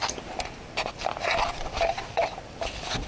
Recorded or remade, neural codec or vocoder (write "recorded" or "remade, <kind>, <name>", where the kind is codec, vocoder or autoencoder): remade, vocoder, BigVGAN v2